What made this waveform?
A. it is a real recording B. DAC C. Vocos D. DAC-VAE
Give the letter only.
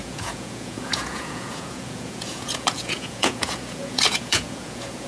C